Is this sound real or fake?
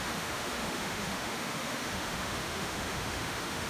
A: fake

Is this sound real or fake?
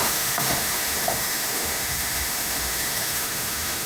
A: fake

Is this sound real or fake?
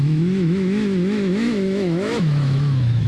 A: fake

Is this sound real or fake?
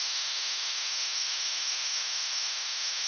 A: fake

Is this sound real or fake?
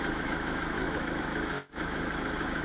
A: fake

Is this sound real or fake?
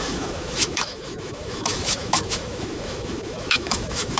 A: fake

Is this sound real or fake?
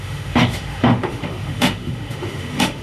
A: fake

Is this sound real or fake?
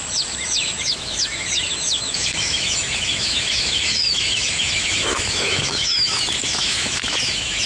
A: fake